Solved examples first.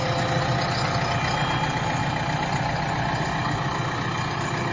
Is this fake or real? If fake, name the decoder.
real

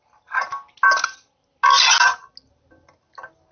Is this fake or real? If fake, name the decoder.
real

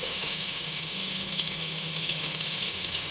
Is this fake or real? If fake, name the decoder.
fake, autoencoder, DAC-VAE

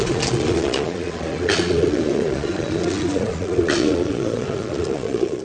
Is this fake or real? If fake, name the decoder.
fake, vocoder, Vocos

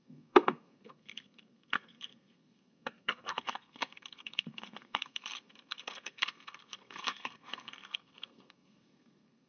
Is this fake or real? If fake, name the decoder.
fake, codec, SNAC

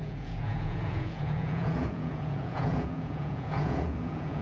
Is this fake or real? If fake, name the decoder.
fake, vocoder, Vocos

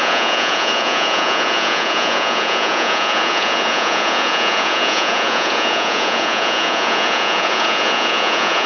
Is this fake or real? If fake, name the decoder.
fake, vocoder, Vocos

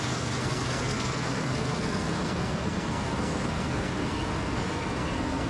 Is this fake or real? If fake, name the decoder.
fake, codec, SNAC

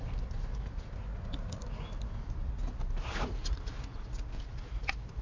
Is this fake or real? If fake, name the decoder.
real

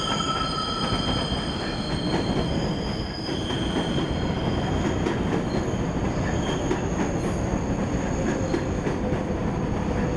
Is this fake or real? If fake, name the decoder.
real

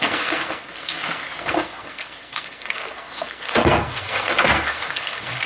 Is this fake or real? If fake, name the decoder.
fake, codec, SNAC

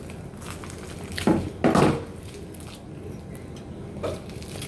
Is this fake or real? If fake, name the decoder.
real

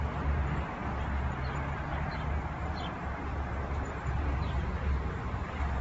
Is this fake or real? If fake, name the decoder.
fake, vocoder, BigVGAN v2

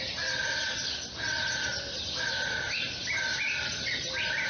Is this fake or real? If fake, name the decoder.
real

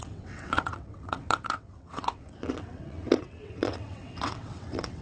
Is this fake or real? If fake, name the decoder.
fake, vocoder, WaveNeXt